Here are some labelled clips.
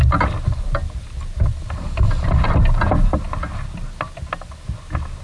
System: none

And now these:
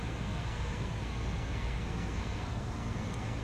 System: codec, SNAC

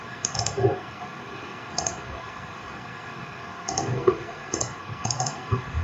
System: codec, SNAC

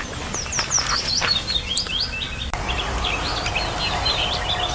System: none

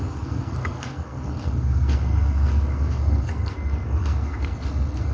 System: codec, SNAC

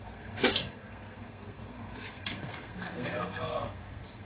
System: codec, SNAC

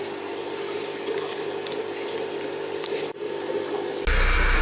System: none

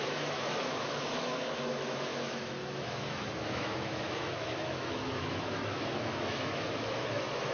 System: autoencoder, DAC-VAE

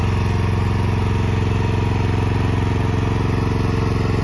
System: none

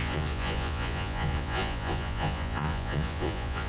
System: vocoder, Vocos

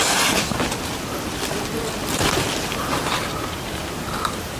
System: none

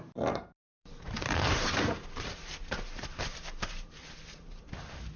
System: vocoder, BigVGAN v2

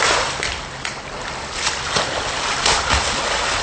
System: none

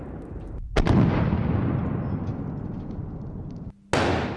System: none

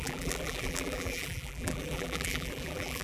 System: vocoder, BigVGAN v2